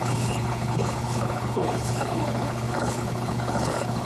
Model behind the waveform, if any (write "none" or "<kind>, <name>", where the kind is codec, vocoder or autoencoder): codec, HILCodec